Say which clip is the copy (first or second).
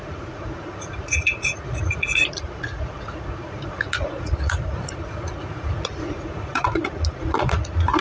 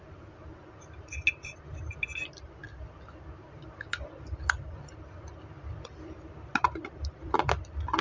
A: first